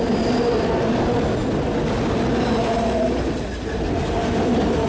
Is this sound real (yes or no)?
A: yes